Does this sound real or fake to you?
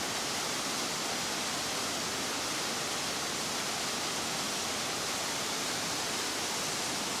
real